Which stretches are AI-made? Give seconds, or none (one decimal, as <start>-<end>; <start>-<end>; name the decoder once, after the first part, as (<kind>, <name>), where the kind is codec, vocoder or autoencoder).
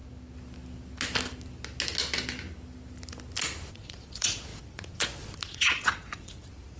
3.7-6.8 (vocoder, Vocos)